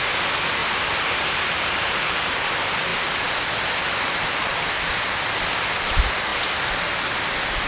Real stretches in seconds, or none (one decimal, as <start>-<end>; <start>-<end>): 0.0-0.6; 2.5-7.7